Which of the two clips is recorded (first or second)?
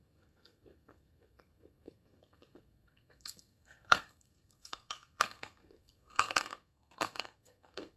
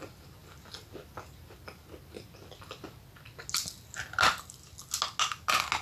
second